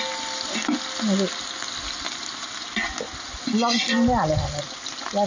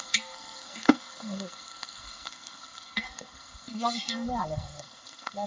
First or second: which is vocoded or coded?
second